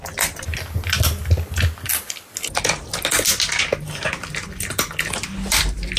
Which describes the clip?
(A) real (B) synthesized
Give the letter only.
A